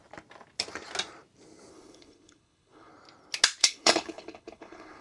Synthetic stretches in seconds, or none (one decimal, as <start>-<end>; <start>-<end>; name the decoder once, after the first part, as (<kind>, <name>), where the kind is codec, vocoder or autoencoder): 1.7-2.9 (codec, HILCodec); 3.6-5.0